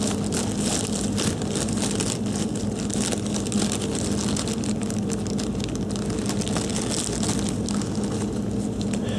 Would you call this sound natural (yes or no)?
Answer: yes